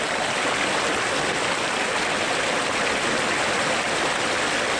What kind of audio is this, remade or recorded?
recorded